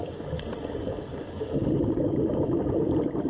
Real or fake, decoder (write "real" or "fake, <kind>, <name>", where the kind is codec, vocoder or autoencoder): real